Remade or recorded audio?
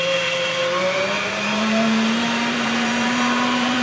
remade